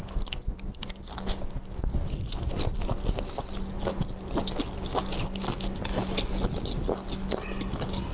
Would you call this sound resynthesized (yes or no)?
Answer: no